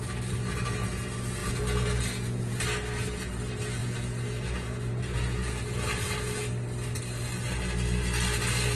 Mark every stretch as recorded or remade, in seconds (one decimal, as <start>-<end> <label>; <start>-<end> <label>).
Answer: 0.0-1.4 recorded; 1.4-2.5 remade; 2.5-3.8 recorded; 3.8-6.4 remade; 6.4-8.8 recorded